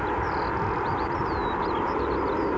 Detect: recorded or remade recorded